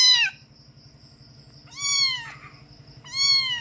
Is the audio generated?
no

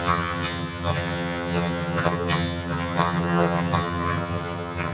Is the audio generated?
yes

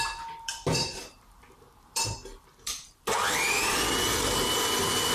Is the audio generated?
yes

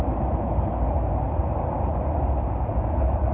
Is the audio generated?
no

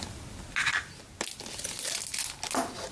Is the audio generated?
no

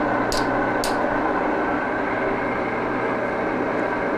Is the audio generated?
no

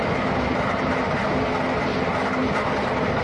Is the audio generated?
no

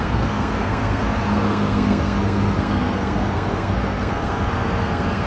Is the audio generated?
yes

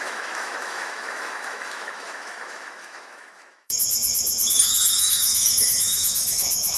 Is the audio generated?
yes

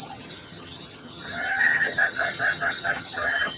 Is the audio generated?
yes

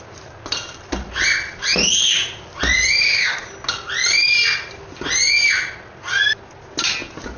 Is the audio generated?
no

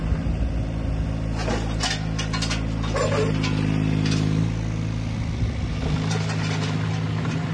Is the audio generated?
no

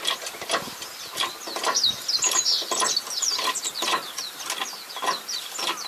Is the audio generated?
no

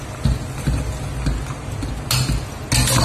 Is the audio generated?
no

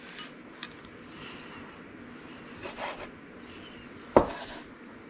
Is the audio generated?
no